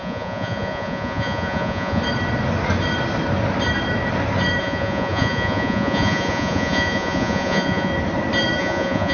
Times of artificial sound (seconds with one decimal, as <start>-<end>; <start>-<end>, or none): 0.0-2.0; 4.6-7.9; 8.6-9.1